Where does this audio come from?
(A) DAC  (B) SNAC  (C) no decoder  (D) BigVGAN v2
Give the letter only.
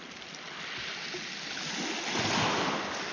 C